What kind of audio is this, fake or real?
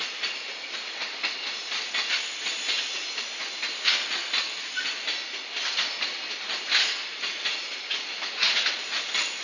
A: real